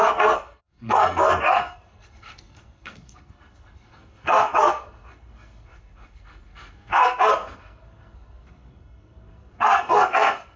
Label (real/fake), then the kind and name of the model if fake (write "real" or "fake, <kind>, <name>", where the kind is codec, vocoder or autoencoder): fake, codec, SNAC